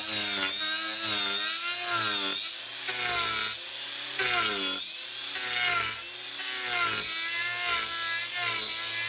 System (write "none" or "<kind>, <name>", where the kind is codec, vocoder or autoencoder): none